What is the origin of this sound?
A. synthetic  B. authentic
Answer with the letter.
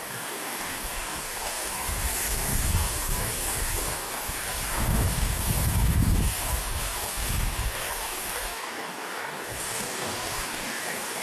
A